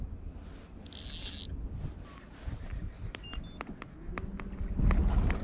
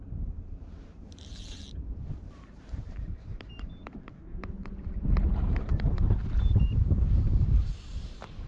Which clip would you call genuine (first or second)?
first